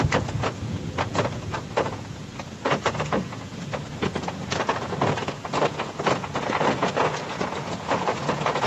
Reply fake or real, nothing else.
fake